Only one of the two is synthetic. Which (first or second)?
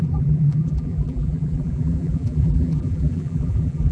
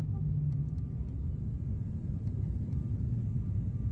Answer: first